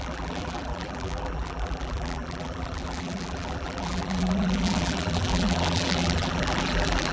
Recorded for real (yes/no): no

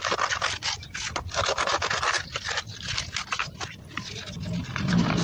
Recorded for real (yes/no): yes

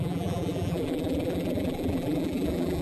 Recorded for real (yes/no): no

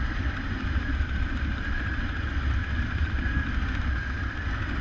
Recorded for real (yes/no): no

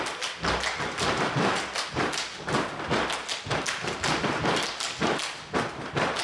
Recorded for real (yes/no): no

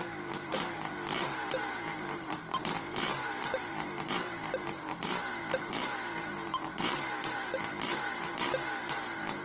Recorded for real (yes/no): no